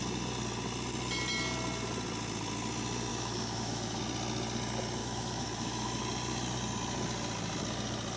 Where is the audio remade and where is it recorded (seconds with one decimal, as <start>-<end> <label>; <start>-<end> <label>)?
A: 0.0-3.1 recorded; 3.1-4.0 remade; 4.0-5.0 recorded; 5.0-6.0 remade; 6.0-8.2 recorded